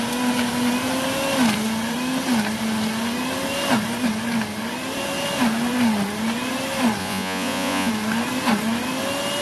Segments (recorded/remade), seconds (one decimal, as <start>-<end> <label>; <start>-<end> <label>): 0.0-7.0 recorded; 7.0-7.9 remade; 7.9-9.4 recorded